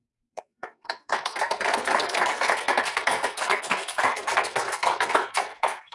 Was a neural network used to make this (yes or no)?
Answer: yes